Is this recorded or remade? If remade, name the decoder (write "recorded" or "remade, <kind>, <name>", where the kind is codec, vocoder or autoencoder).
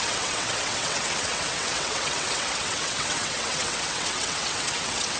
remade, vocoder, WaveNeXt